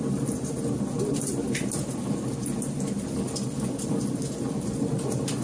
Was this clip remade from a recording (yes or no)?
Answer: no